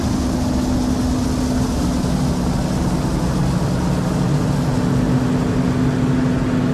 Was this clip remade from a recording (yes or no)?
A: no